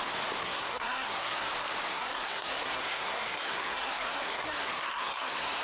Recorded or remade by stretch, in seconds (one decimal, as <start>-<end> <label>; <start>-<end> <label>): 0.0-0.4 recorded; 0.4-1.5 remade; 1.5-1.9 recorded; 1.9-5.6 remade

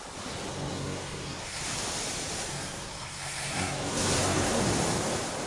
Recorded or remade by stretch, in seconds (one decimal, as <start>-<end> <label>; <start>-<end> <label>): 0.0-0.5 recorded; 0.5-1.6 remade; 1.6-2.5 recorded; 2.5-4.6 remade; 4.6-5.5 recorded

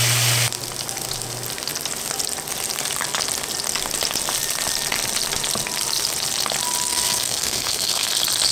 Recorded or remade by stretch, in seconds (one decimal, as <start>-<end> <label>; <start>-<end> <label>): 0.0-6.9 recorded; 6.9-8.1 remade; 8.1-8.5 recorded

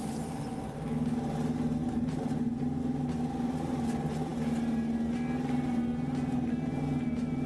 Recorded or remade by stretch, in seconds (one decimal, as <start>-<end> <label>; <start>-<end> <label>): 0.0-7.5 recorded

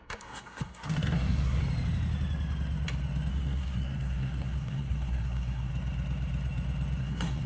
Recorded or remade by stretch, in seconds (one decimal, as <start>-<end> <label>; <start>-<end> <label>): 0.0-1.6 remade; 1.6-3.3 recorded; 3.3-5.7 remade; 5.7-7.0 recorded; 7.0-7.5 remade

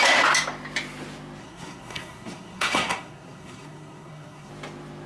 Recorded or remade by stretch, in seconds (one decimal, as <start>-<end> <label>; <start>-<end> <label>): 0.0-1.4 recorded; 1.4-4.5 remade; 4.5-5.1 recorded